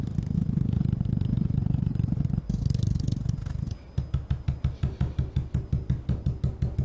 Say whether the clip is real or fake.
real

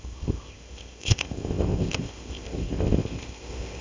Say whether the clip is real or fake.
fake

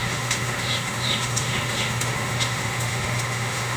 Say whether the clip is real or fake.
fake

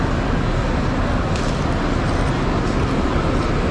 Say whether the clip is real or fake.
real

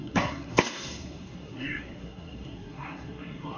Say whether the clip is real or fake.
fake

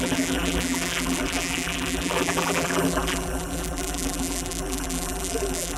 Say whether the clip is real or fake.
fake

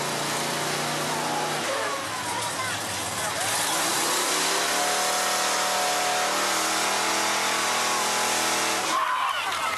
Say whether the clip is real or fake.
real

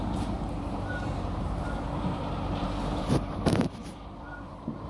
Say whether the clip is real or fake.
fake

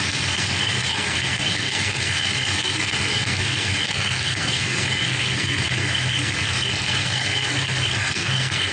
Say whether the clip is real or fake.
fake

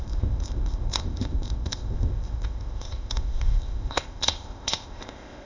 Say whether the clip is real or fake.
fake